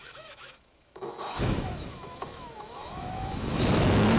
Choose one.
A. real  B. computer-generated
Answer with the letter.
B